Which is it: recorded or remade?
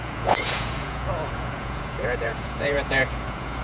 remade